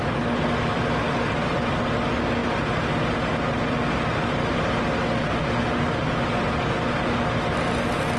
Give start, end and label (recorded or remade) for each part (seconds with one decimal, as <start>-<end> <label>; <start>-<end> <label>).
0.0-8.2 recorded